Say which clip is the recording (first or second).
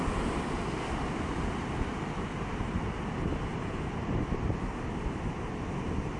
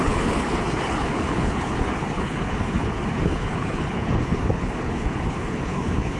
first